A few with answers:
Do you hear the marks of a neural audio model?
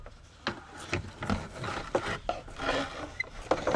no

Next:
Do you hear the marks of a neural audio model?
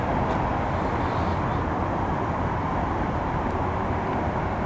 no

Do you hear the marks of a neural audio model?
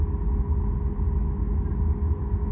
no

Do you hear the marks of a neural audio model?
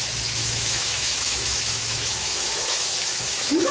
yes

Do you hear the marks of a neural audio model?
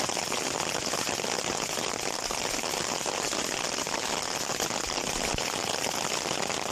no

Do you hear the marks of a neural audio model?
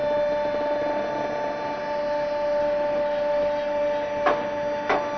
no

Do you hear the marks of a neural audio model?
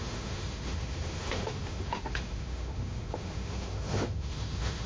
yes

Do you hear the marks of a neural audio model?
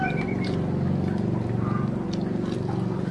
no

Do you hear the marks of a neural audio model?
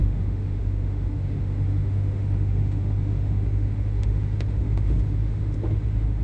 yes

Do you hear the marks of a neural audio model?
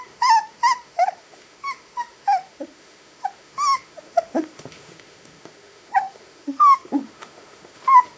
yes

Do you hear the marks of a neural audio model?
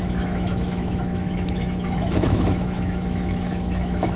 yes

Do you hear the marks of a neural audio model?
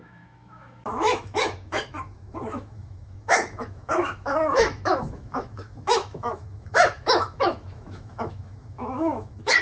yes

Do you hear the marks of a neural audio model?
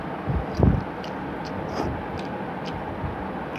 no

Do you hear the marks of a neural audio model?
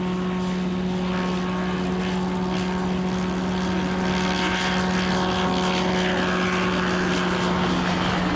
no